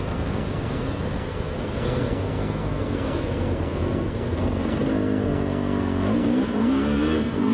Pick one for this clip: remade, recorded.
remade